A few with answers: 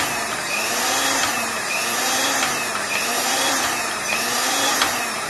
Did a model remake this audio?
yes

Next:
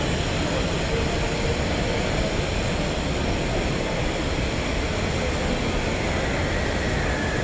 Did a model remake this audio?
no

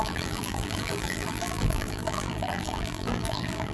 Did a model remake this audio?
yes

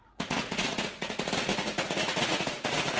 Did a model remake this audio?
yes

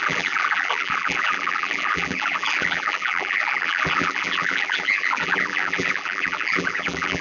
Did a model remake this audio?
yes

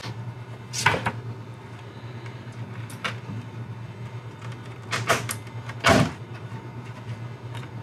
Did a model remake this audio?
no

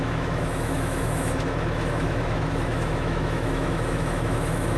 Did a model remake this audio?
yes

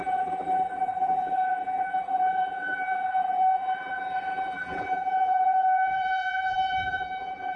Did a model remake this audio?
yes